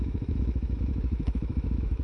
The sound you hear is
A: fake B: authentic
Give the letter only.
A